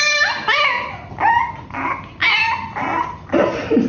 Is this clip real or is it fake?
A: real